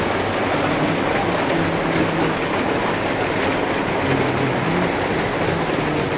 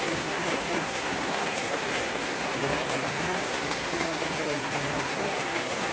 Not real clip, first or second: second